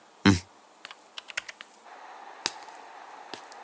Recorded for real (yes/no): yes